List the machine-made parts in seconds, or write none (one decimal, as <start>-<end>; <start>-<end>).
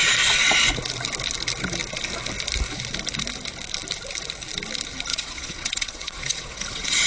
5.1-7.1